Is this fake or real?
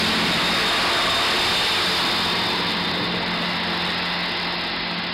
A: real